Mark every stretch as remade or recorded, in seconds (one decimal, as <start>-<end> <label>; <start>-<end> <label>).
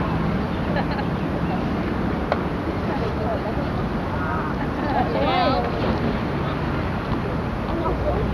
0.0-8.3 recorded